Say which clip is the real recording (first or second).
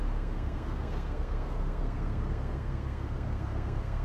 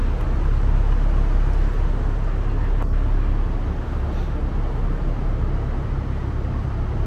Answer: second